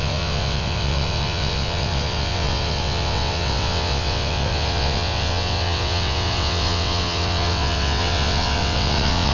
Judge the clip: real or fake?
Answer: fake